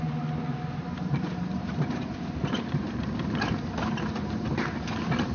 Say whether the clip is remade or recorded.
remade